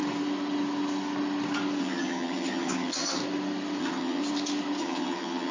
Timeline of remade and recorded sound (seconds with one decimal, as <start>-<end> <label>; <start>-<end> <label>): 0.0-1.8 recorded; 1.8-3.2 remade; 3.2-3.8 recorded; 3.8-4.2 remade; 4.2-4.8 recorded; 4.8-5.5 remade